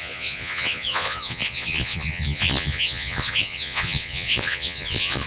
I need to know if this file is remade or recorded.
remade